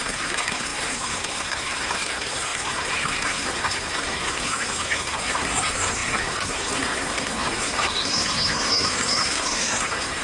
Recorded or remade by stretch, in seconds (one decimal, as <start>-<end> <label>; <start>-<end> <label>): 0.0-10.2 remade

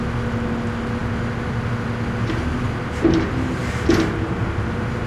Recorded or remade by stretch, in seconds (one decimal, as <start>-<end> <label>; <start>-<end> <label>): 0.0-5.1 recorded

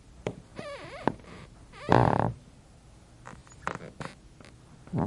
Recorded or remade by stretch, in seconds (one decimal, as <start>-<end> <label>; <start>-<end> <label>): 0.0-0.5 recorded; 0.5-1.9 remade; 1.9-5.1 recorded

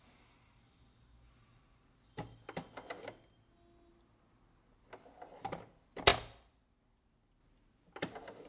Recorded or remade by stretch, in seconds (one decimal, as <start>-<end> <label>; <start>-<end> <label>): 0.0-8.5 recorded

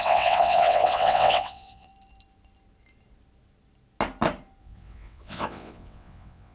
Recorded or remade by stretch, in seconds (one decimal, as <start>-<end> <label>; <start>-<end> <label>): 0.0-1.9 remade; 1.9-4.6 recorded; 4.6-6.5 remade